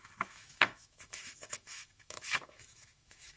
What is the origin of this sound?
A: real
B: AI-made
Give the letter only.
B